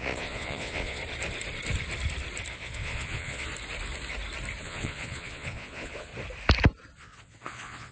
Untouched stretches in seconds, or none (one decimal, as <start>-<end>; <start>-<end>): 1.0-2.5; 3.5-4.6; 6.1-7.0